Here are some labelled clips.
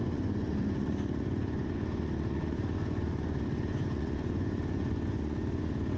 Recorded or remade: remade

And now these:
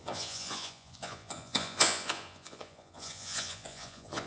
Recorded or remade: remade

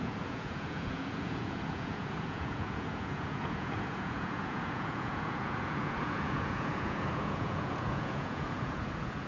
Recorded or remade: remade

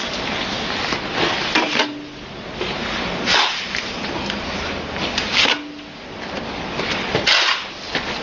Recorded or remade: recorded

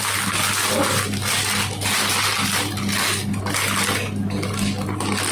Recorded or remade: recorded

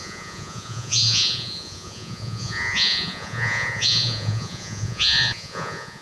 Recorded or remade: remade